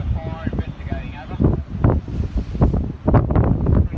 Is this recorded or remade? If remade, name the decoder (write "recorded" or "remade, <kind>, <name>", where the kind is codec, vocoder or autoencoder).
recorded